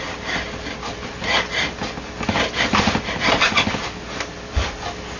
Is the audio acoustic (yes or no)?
yes